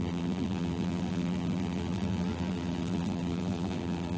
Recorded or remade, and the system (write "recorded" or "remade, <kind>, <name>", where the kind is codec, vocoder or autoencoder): remade, vocoder, BigVGAN v2